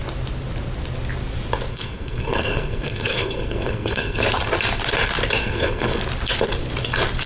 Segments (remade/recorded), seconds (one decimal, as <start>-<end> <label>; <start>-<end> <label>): 0.0-1.7 recorded; 1.7-4.2 remade; 4.2-5.4 recorded; 5.4-6.0 remade; 6.0-7.3 recorded

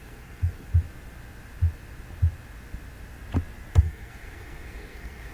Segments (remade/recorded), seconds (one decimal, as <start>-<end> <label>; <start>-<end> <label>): 0.0-0.7 remade; 0.7-3.7 recorded; 3.7-5.3 remade

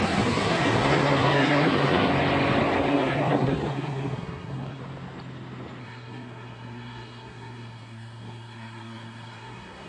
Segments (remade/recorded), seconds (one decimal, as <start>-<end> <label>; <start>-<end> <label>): 0.0-2.1 remade; 2.1-2.9 recorded; 2.9-4.8 remade; 4.8-5.8 recorded; 5.8-9.9 remade

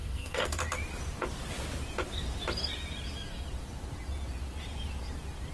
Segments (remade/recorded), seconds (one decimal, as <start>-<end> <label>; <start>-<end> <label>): 0.0-0.6 remade; 0.6-5.5 recorded

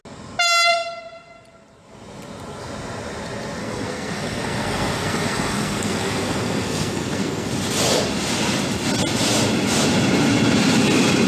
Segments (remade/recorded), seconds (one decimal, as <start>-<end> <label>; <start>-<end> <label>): 0.0-3.6 recorded; 3.6-7.5 remade; 7.5-11.3 recorded

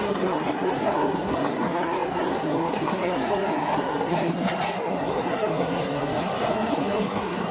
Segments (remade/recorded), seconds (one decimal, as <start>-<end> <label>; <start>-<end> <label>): 0.0-7.5 remade

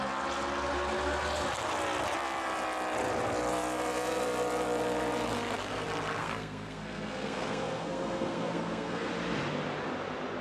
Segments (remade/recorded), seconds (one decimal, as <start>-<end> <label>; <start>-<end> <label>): 0.0-6.2 recorded; 6.2-9.1 remade; 9.1-10.4 recorded

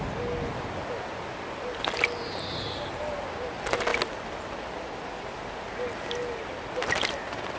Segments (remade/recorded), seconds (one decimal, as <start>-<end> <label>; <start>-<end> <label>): 0.0-7.6 recorded